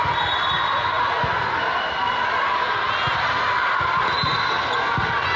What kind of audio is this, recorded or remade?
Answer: recorded